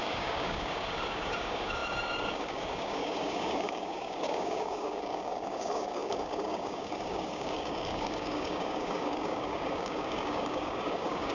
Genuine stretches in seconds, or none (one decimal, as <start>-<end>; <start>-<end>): none